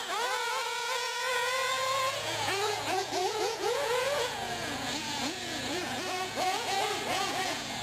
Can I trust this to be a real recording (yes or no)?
no